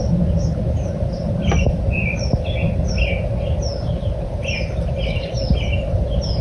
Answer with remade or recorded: recorded